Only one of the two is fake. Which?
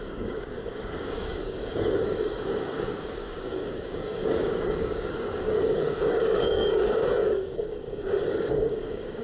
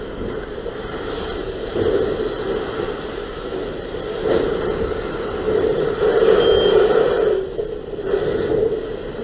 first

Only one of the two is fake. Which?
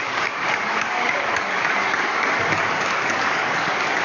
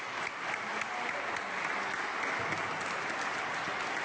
first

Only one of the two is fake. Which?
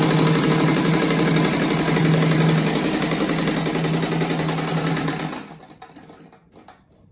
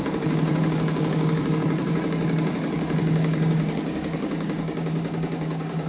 second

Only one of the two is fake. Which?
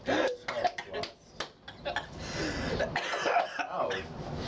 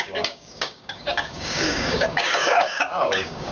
second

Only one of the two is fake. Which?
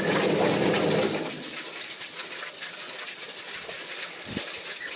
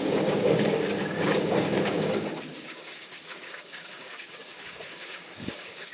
second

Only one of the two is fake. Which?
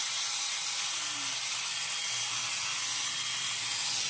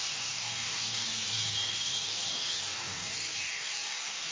second